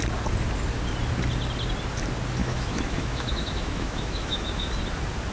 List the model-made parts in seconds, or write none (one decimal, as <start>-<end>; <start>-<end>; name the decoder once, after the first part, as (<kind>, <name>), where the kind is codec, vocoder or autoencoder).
2.4-4.7 (autoencoder, DAC-VAE)